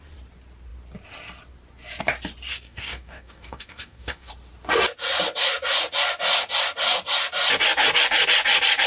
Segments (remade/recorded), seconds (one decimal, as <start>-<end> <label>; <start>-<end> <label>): 0.0-2.5 recorded; 2.5-4.3 remade; 4.3-8.9 recorded